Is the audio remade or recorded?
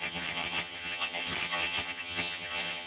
remade